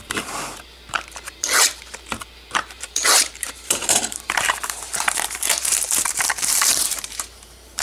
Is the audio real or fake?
fake